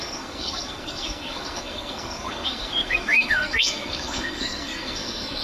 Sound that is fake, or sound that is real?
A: fake